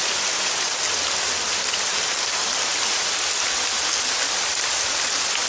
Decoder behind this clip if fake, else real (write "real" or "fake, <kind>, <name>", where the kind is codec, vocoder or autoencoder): real